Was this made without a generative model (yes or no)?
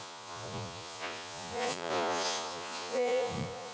no